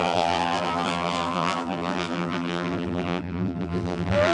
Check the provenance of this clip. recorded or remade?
remade